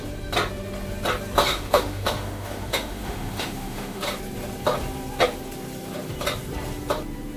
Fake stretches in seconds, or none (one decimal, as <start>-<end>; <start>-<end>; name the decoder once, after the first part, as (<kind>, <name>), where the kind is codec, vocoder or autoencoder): 1.5-4.1 (autoencoder, DAC-VAE)